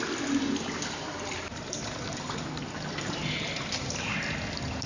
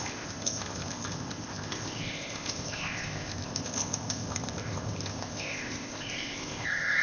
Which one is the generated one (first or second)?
second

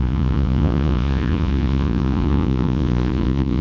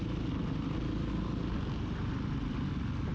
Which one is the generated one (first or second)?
first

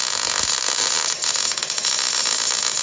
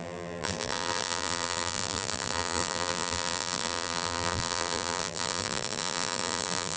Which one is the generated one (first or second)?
second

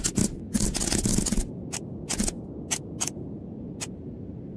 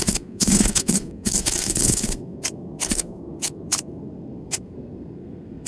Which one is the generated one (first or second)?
second